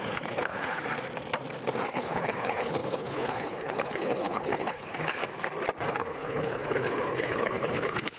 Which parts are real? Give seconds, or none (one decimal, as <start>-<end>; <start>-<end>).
0.8-1.9; 5.2-5.9